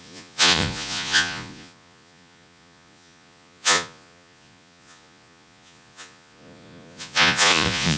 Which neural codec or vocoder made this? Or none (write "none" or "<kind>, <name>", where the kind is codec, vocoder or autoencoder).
vocoder, Vocos